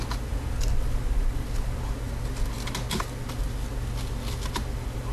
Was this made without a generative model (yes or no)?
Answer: yes